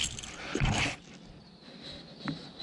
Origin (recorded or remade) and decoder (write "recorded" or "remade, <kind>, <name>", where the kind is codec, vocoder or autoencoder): recorded